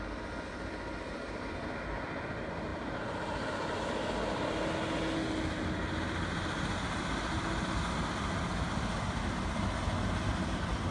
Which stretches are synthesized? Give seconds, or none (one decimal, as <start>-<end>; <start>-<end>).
none